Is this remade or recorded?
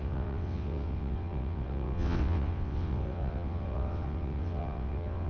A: remade